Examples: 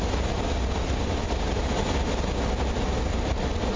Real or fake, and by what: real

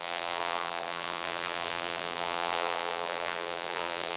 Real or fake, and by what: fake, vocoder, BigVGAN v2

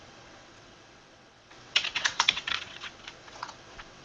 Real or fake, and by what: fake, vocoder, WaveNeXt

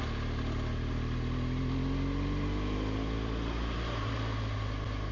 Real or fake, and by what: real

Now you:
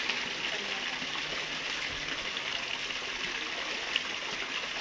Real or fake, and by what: real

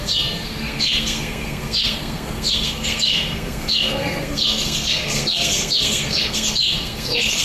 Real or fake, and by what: fake, codec, SNAC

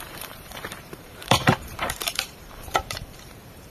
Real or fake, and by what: fake, vocoder, BigVGAN v2